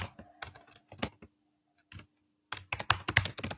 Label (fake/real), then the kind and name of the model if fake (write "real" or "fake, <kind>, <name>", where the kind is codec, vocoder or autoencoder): real